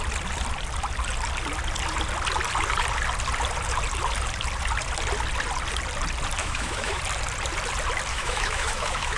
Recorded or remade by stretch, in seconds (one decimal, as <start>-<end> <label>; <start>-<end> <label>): 0.0-6.4 recorded; 6.4-7.0 remade; 7.0-8.1 recorded; 8.1-9.2 remade